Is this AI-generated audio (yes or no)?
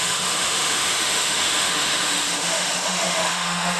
yes